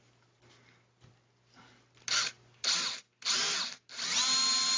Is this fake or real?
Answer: real